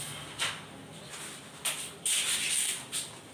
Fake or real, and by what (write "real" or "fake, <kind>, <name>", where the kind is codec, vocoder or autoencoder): real